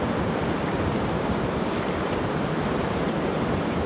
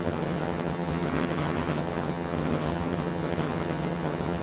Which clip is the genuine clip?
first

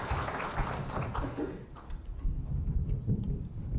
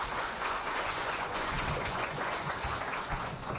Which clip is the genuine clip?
first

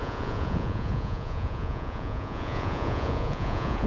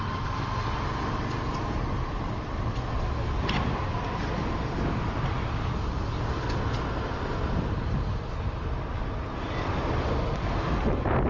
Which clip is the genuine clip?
second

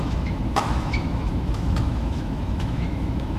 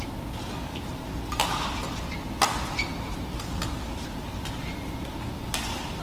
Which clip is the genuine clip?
second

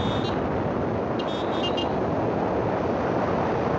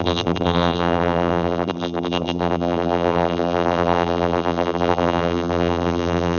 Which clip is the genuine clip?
first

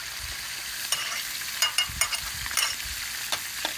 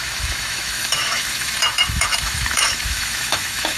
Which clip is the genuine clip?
first